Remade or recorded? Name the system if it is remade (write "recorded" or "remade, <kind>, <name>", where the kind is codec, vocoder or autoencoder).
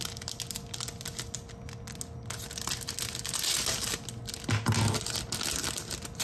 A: recorded